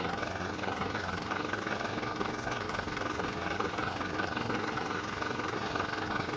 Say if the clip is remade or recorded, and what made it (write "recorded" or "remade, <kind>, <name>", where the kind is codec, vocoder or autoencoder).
remade, codec, SNAC